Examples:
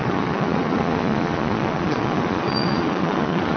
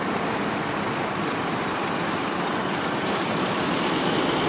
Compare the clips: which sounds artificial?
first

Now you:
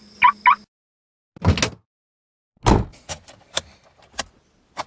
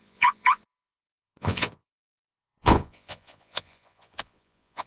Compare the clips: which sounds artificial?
second